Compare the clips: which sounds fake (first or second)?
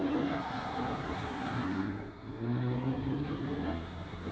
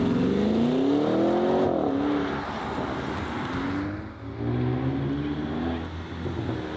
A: first